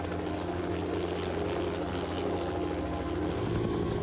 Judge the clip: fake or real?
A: real